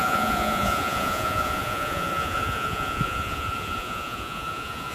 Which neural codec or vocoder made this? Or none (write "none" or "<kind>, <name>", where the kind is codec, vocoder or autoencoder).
vocoder, Vocos